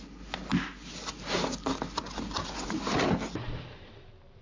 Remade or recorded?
recorded